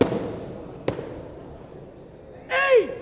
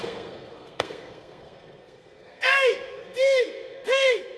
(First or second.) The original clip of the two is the first